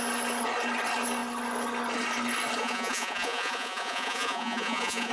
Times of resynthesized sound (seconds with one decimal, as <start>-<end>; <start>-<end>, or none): 2.6-5.1